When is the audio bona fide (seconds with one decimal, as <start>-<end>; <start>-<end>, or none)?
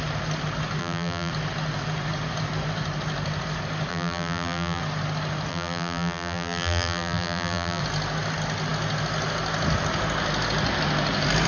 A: 0.0-0.8; 1.3-3.9; 4.8-5.5; 7.8-11.5